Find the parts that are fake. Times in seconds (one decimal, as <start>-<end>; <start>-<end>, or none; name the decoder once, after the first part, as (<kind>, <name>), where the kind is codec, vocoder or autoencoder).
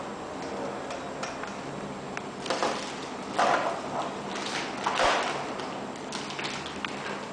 none